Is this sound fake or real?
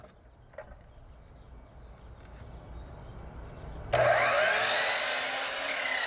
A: real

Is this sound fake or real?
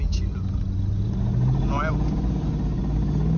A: real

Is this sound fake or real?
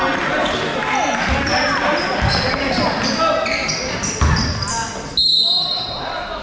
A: real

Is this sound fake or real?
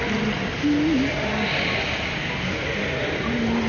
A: real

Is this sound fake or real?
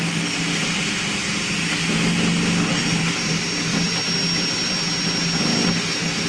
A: real